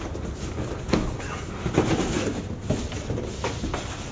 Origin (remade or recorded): recorded